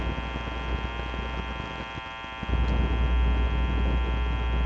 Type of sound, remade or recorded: recorded